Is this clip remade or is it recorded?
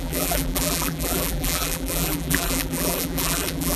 remade